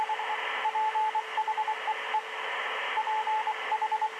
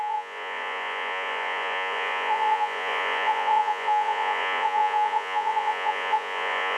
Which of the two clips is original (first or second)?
first